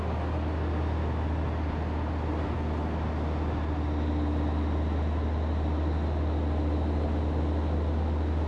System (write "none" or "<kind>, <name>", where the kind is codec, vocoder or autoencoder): none